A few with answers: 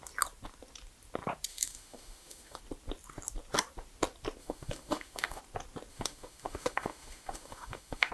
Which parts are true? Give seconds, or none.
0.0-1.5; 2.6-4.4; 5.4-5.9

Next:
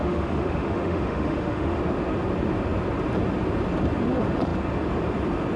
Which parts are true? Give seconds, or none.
1.8-5.6